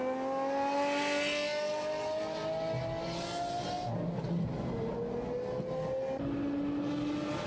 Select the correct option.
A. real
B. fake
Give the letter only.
A